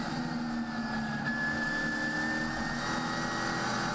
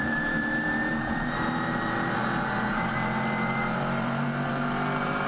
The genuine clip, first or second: first